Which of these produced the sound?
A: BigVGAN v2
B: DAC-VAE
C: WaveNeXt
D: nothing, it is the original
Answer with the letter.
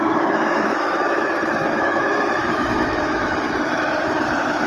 B